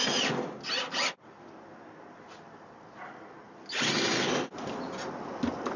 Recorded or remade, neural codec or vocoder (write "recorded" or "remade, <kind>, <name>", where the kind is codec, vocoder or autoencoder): recorded